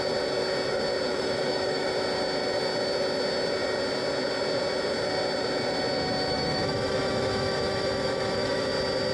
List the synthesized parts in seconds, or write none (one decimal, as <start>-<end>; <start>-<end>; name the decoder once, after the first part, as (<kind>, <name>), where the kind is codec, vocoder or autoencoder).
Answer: 1.1-1.9 (autoencoder, DAC-VAE); 6.3-8.7